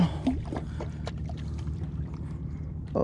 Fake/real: real